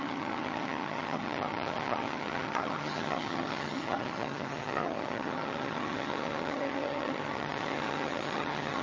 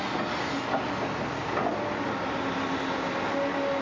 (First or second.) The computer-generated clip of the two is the first